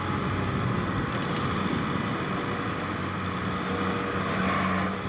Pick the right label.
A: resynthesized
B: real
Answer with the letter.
B